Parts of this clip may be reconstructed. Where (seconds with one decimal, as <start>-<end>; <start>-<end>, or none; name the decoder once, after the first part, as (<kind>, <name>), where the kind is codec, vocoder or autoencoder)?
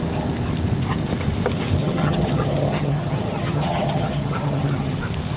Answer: 1.8-5.0 (vocoder, HiFi-GAN)